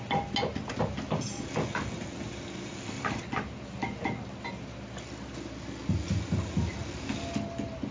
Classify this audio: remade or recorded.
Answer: recorded